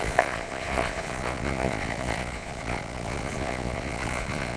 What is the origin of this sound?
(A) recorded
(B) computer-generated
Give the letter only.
B